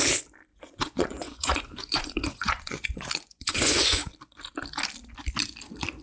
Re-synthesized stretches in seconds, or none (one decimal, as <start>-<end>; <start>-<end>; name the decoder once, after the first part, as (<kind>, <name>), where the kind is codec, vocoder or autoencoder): 0.5-4.1 (vocoder, Vocos)